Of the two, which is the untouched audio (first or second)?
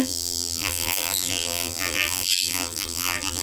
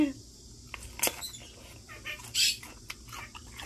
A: second